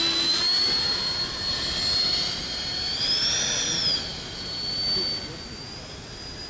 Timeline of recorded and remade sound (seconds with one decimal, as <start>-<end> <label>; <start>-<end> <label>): 0.0-6.5 recorded